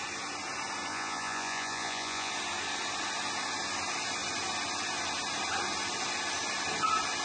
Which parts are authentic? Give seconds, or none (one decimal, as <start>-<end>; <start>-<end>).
0.0-0.9; 2.3-7.2